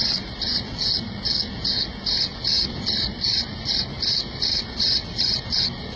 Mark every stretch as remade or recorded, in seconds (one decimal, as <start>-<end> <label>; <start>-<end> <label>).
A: 0.0-2.3 recorded; 2.3-5.4 remade; 5.4-6.0 recorded